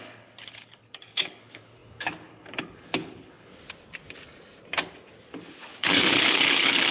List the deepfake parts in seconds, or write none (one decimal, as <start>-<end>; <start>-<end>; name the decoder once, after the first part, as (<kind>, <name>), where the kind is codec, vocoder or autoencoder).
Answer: 0.0-3.5 (codec, HILCodec); 5.5-6.9